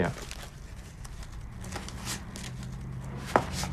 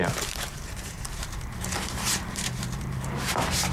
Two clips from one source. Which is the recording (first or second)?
first